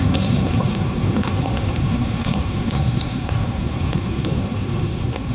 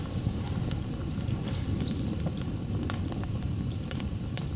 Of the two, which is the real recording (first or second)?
second